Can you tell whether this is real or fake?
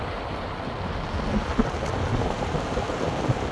real